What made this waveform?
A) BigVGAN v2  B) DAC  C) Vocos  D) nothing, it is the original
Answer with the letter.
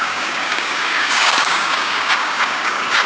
B